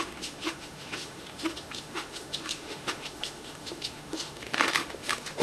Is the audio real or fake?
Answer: fake